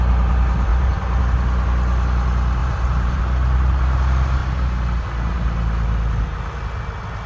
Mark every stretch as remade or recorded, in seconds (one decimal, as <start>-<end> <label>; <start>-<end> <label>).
0.0-0.7 recorded; 0.7-1.2 remade; 1.2-2.6 recorded; 2.6-3.2 remade; 3.2-7.3 recorded